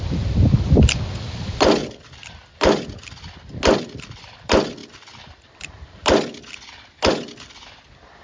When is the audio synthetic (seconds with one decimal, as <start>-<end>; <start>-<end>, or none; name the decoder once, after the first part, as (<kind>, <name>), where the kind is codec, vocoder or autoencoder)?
none